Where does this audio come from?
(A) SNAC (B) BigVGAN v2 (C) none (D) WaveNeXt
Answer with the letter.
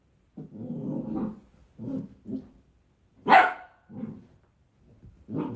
C